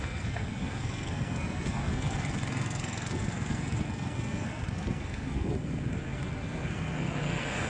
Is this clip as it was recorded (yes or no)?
no